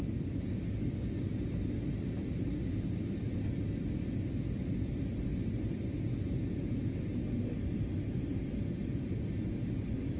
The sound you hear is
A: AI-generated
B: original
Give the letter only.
B